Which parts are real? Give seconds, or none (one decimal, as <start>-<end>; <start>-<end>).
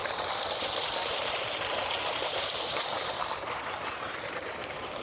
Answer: 0.0-1.3